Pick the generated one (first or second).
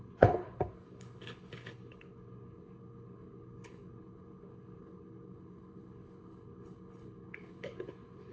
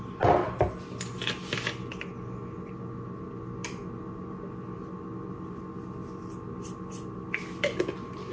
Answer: first